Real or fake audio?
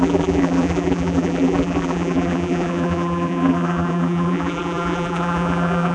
fake